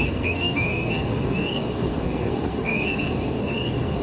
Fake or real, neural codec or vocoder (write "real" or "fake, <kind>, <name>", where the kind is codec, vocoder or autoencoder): fake, codec, SNAC